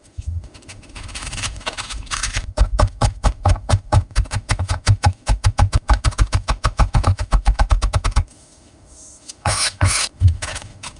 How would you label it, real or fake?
fake